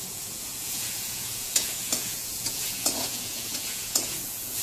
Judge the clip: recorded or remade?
remade